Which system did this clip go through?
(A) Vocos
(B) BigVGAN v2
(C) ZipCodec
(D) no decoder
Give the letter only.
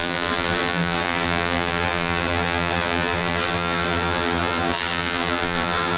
B